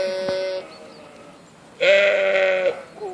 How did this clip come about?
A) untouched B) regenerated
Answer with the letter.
A